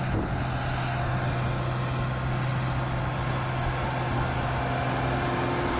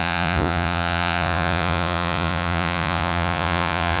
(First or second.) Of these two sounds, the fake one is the second